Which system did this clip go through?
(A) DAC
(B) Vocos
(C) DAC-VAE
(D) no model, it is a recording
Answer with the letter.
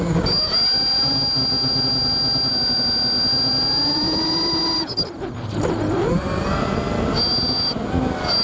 D